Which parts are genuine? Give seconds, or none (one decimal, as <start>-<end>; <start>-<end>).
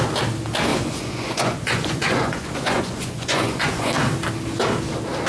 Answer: 0.0-0.7; 3.9-5.3